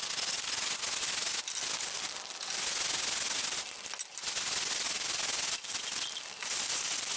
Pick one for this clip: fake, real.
real